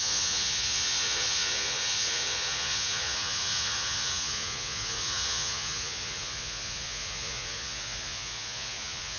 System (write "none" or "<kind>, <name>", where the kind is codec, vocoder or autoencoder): vocoder, Vocos